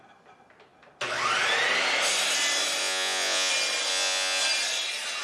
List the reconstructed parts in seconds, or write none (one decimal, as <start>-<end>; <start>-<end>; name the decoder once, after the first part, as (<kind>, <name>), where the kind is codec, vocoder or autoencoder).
2.8-3.5 (vocoder, Vocos); 3.9-4.4